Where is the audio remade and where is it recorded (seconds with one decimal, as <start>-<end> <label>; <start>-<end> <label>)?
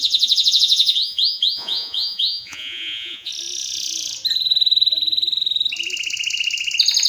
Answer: 0.0-3.3 remade; 3.3-7.1 recorded